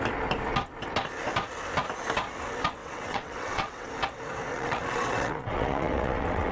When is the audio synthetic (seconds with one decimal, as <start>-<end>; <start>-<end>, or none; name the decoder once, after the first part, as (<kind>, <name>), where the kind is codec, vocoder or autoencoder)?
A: 2.8-3.9 (vocoder, WaveNeXt); 4.5-6.5